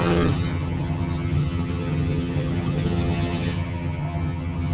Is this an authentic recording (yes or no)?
no